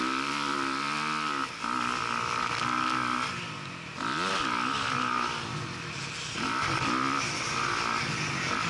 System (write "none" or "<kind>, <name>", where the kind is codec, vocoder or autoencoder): none